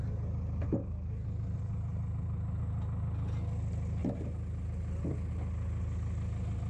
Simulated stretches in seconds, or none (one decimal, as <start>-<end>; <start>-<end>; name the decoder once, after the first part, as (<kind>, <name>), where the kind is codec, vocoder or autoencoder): 0.6-2.6 (vocoder, BigVGAN v2)